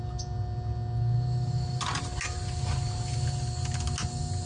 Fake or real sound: real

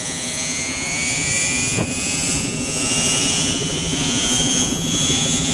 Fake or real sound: fake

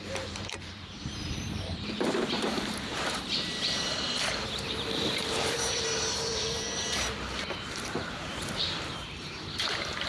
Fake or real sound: fake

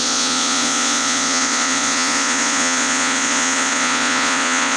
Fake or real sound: fake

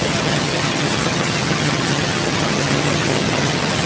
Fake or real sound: fake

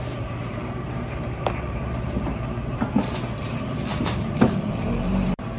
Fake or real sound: fake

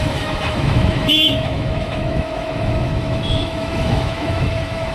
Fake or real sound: fake